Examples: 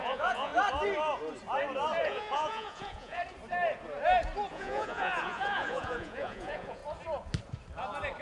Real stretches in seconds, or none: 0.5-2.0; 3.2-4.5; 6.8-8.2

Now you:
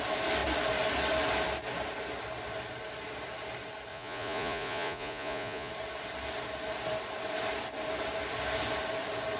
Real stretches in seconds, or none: 0.0-3.9; 5.7-9.4

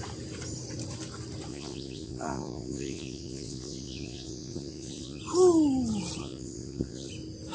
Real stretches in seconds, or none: 0.0-1.5; 5.2-6.2; 7.1-7.5

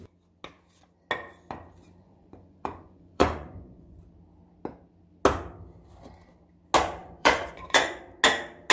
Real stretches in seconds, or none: 0.0-2.0; 4.0-7.0; 8.0-8.7

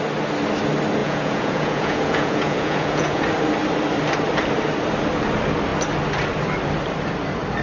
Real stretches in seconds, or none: 0.0-1.0; 3.2-7.6

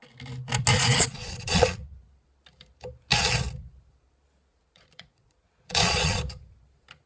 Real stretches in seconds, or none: 0.0-0.7; 1.8-4.5; 6.2-7.1